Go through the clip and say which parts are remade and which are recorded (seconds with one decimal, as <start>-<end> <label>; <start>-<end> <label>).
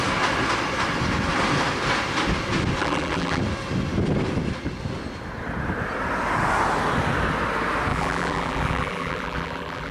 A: 0.0-2.8 recorded; 2.8-3.4 remade; 3.4-7.9 recorded; 7.9-9.9 remade